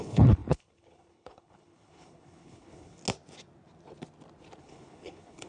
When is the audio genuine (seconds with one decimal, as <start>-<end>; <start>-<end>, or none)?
3.0-4.6